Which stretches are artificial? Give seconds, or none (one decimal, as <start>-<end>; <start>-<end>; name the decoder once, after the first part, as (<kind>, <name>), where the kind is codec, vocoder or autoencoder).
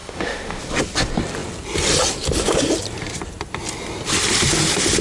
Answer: 0.0-0.6 (autoencoder, DAC-VAE)